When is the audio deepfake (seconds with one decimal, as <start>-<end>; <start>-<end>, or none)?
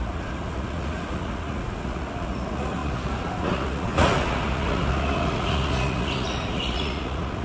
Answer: 0.0-7.4